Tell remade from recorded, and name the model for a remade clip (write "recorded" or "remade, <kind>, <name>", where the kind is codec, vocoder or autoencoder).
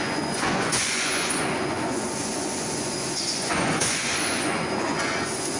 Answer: remade, vocoder, Vocos